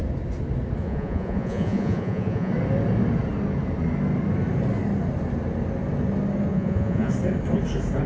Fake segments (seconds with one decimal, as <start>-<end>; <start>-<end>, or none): 0.8-2.5; 6.5-7.1